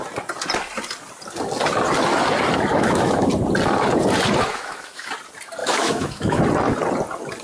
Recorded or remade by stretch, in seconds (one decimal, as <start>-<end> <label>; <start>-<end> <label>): 0.0-2.7 recorded; 2.7-3.3 remade; 3.3-4.5 recorded; 4.5-5.1 remade; 5.1-5.6 recorded; 5.6-6.4 remade; 6.4-7.4 recorded